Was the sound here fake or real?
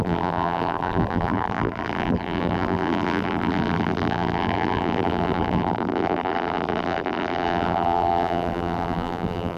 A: fake